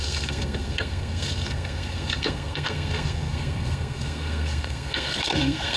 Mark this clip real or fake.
fake